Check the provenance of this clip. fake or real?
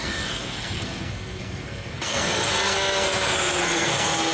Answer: fake